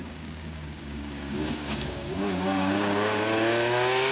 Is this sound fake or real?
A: fake